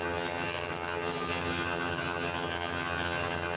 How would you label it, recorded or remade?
remade